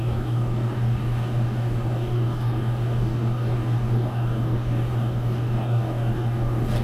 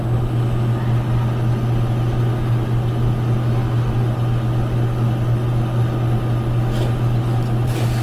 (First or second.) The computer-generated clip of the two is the first